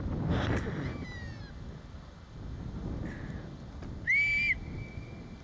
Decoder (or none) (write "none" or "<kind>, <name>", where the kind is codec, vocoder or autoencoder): none